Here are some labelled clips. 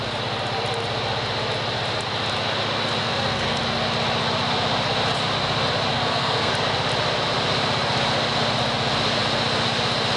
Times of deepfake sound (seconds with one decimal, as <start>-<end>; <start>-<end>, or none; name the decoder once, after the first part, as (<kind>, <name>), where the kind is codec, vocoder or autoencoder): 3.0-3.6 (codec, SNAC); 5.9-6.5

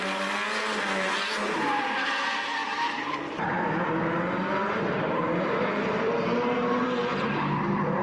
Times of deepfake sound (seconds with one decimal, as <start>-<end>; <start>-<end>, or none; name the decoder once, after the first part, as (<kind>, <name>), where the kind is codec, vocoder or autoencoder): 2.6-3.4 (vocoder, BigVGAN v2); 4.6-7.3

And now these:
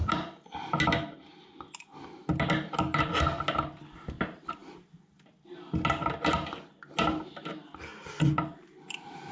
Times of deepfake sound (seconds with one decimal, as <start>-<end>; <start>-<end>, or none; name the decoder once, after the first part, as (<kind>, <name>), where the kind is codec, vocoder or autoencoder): none